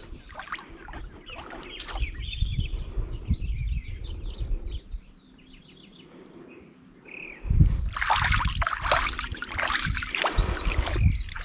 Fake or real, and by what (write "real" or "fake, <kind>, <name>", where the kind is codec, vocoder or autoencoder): fake, vocoder, BigVGAN v2